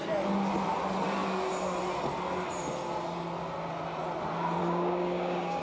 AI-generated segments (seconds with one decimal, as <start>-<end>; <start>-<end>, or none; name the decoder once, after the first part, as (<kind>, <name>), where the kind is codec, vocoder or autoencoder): 4.6-5.6 (codec, DAC)